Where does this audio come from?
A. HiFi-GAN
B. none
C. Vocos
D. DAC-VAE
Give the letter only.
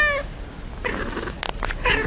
B